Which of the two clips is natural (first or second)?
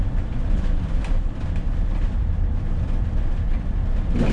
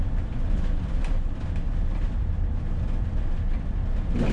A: second